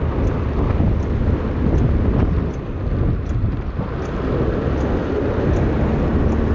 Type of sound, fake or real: real